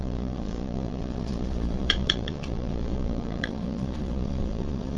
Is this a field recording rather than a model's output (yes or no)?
no